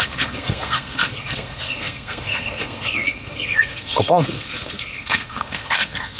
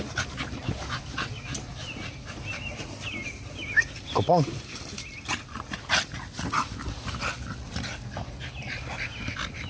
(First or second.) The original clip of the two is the second